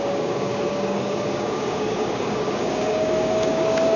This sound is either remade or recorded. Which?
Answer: remade